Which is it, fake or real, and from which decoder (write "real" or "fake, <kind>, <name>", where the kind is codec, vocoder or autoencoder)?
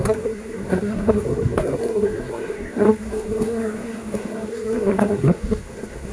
fake, codec, SNAC